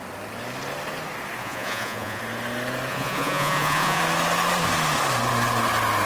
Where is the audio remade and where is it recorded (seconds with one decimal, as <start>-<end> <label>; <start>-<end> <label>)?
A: 0.0-1.4 recorded; 1.4-2.2 remade; 2.2-2.9 recorded; 2.9-4.0 remade; 4.0-6.1 recorded